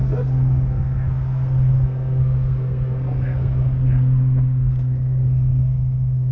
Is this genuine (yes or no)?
no